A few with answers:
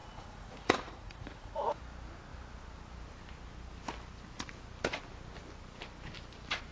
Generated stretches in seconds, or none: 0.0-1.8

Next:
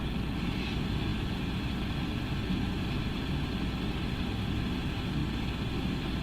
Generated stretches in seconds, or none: none